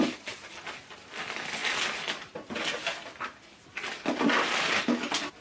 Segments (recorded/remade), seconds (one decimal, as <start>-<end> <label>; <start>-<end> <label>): 0.0-5.4 recorded